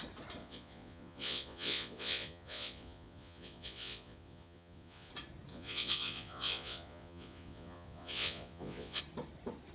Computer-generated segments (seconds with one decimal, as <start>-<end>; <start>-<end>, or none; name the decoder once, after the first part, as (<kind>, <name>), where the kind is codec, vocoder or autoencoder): 0.4-5.1 (vocoder, Vocos); 5.5-9.0